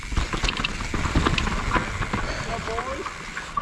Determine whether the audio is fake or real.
real